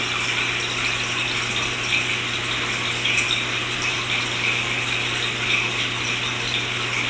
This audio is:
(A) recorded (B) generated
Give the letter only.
A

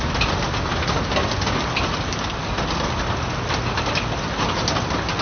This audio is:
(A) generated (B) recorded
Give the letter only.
B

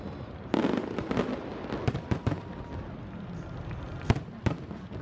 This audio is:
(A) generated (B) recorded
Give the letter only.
B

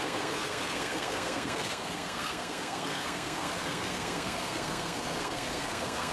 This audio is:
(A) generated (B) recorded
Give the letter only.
A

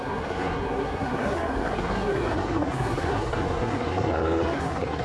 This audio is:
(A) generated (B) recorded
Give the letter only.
A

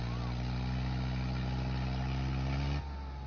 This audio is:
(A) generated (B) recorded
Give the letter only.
B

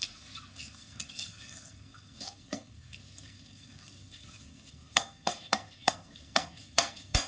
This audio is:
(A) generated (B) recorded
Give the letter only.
A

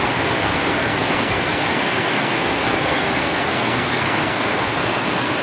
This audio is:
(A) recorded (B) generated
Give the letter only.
B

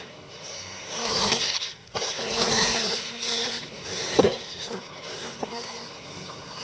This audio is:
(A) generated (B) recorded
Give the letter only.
A